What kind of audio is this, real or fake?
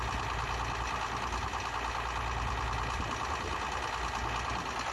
real